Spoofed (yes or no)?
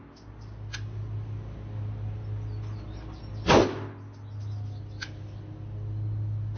no